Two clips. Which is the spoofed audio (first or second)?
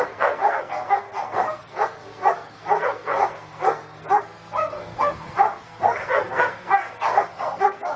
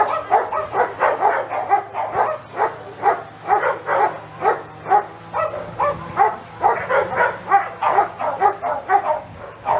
first